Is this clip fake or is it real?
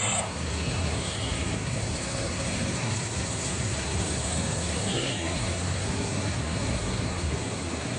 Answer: fake